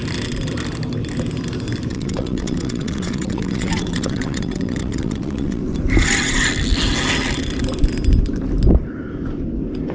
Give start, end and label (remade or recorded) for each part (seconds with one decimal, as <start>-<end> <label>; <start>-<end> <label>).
0.0-1.9 recorded; 1.9-5.6 remade; 5.6-9.9 recorded